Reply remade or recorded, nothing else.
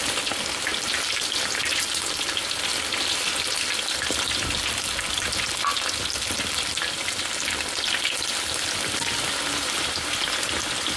recorded